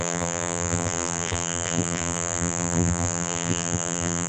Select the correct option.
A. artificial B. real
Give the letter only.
A